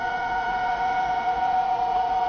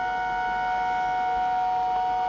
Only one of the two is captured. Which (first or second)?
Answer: second